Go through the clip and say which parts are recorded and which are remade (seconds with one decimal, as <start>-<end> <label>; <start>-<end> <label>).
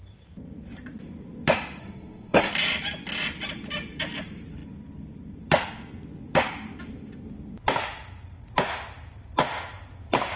0.0-1.8 recorded; 1.8-2.5 remade; 2.5-10.4 recorded